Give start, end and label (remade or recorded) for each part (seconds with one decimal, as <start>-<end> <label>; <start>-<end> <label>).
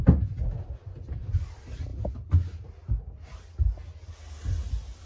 0.0-5.1 recorded